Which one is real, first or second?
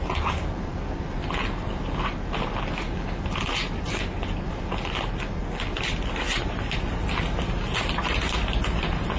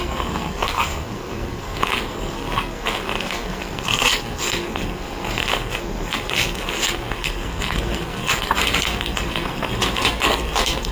first